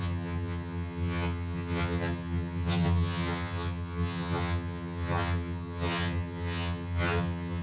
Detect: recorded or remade remade